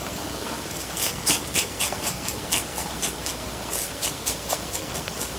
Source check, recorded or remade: remade